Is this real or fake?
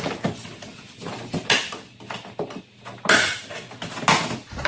real